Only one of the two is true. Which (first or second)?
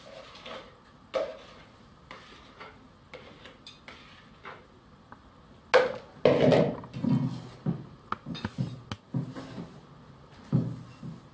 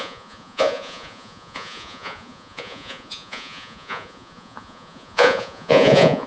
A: first